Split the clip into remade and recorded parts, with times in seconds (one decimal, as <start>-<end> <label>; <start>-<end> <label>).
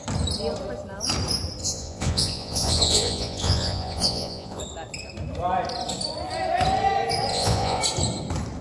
0.0-1.6 recorded; 1.6-4.6 remade; 4.6-7.3 recorded; 7.3-7.8 remade; 7.8-8.6 recorded